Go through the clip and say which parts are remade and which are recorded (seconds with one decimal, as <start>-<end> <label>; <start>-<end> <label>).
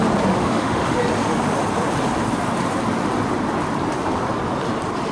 0.0-0.4 recorded; 0.4-1.0 remade; 1.0-5.1 recorded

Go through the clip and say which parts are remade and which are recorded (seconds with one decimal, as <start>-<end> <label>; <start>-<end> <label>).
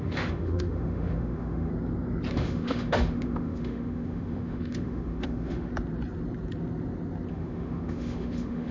0.0-1.7 remade; 1.7-2.3 recorded; 2.3-5.7 remade; 5.7-7.3 recorded; 7.3-8.7 remade